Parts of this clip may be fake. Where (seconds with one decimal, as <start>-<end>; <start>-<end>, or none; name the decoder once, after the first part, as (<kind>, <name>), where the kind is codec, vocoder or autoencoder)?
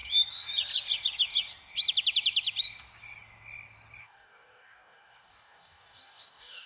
4.0-6.7 (codec, DAC)